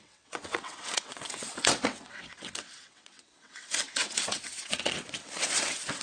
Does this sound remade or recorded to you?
remade